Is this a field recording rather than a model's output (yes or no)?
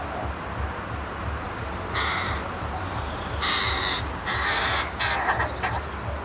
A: yes